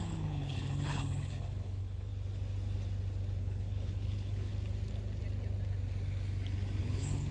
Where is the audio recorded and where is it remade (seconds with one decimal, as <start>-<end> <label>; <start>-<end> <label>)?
0.0-2.1 remade; 2.1-3.4 recorded; 3.4-4.5 remade; 4.5-6.8 recorded; 6.8-7.3 remade